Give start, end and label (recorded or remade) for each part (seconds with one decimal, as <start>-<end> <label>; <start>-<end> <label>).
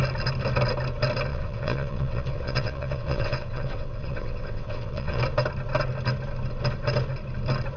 0.0-1.3 recorded; 1.3-5.2 remade; 5.2-7.8 recorded